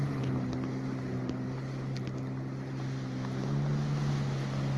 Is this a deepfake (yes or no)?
no